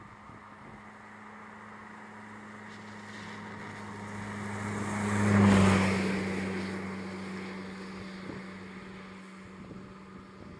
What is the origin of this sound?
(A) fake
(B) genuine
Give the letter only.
B